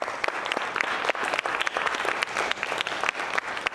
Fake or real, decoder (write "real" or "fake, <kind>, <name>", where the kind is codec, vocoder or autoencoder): real